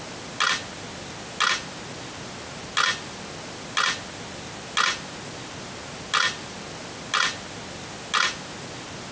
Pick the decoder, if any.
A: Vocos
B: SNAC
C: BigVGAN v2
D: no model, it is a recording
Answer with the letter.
D